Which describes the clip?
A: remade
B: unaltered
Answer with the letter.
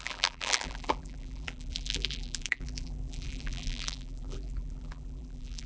A